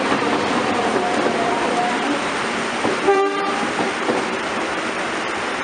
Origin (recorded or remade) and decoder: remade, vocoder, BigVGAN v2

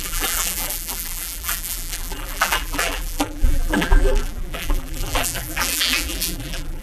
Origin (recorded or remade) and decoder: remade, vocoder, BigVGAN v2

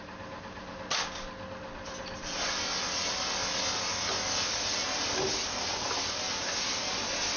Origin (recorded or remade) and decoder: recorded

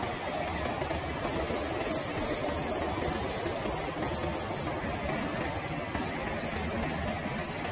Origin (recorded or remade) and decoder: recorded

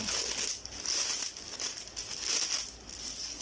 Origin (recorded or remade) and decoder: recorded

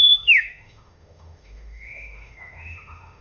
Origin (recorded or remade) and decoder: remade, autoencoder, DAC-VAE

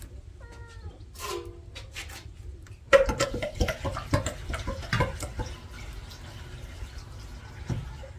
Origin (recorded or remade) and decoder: recorded